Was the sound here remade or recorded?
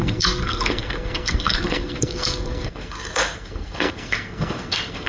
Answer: remade